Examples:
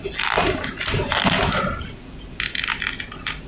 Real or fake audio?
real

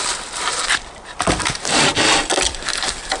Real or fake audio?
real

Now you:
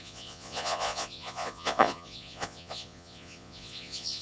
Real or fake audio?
fake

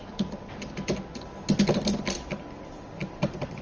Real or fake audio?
real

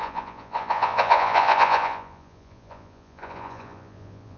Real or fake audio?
fake